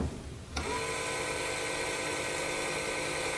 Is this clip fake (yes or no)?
no